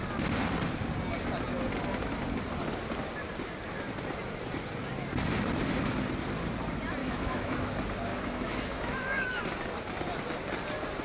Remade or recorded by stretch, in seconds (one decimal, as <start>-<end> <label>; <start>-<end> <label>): 0.0-7.0 recorded; 7.0-7.7 remade; 7.7-8.1 recorded; 8.1-9.4 remade; 9.4-11.0 recorded

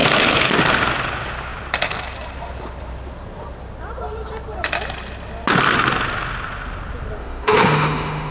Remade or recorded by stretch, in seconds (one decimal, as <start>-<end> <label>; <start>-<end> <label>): 0.0-7.2 recorded; 7.2-8.3 remade